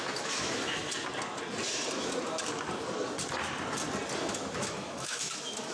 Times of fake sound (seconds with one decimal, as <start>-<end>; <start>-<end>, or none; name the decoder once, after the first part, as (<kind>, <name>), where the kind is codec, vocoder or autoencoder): 0.0-0.8 (autoencoder, DAC-VAE); 4.2-5.7